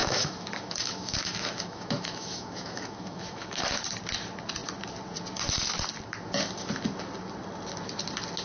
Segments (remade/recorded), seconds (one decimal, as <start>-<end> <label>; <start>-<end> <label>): 0.0-3.6 remade; 3.6-8.4 recorded